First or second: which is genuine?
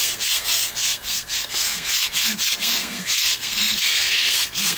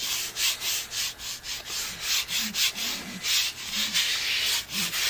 second